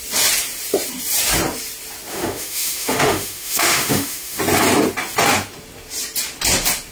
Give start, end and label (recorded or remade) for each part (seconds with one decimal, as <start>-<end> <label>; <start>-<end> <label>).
0.0-2.1 recorded; 2.1-4.4 remade; 4.4-6.9 recorded